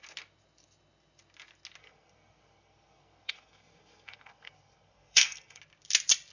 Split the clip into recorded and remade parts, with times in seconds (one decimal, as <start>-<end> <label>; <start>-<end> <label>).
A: 0.0-1.8 recorded; 1.8-5.6 remade; 5.6-6.3 recorded